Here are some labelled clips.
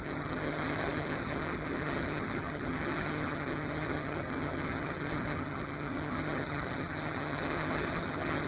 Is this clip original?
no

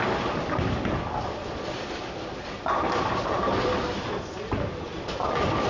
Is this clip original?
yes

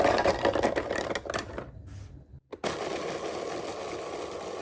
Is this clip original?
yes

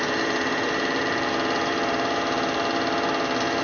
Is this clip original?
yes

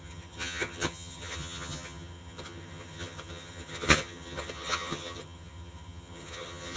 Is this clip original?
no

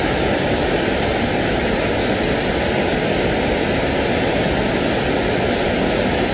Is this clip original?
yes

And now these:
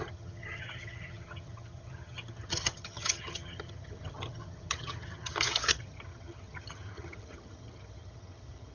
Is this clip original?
no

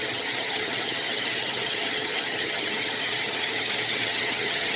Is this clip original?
no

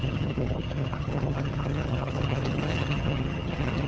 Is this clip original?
no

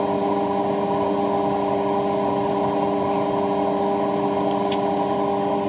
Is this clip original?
yes